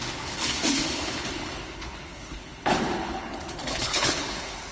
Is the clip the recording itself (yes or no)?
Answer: no